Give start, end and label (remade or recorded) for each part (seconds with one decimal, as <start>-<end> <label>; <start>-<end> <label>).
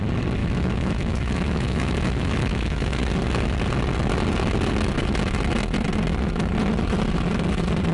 0.0-0.4 recorded; 0.4-3.0 remade; 3.0-7.9 recorded